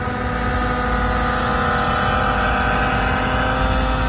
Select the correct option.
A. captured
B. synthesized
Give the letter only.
A